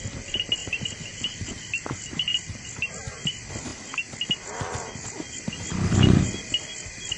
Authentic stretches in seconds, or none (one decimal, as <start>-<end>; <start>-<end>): 0.0-0.6; 1.5-2.3; 2.9-7.2